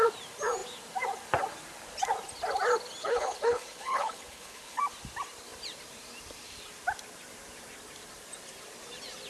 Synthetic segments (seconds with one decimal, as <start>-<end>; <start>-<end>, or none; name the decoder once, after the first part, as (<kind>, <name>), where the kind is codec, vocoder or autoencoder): 3.0-4.8 (codec, HILCodec)